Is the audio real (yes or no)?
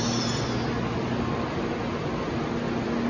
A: yes